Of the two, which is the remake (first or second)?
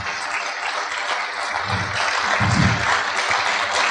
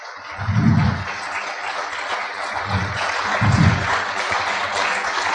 second